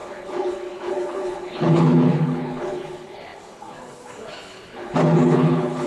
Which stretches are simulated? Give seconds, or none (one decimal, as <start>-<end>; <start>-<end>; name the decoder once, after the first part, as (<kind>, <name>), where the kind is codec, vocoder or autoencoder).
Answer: 0.0-5.9 (codec, HILCodec)